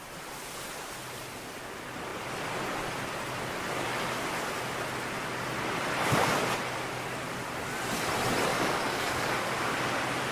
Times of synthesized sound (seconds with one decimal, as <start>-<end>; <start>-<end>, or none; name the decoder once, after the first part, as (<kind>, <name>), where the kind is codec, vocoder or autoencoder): 8.5-9.8 (codec, DAC)